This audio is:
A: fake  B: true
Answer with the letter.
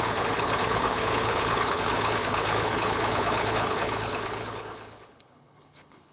A